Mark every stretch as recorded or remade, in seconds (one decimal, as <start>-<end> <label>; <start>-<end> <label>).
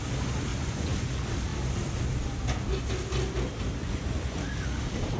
0.0-0.5 recorded; 0.5-1.1 remade; 1.1-3.8 recorded; 3.8-4.4 remade; 4.4-5.2 recorded